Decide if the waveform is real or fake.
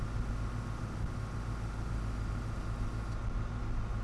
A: real